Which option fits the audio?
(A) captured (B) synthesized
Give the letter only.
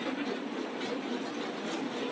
A